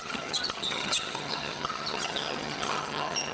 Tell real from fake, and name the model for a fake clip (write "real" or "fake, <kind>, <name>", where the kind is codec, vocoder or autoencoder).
fake, vocoder, HiFi-GAN